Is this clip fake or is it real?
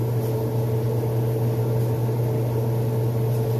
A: real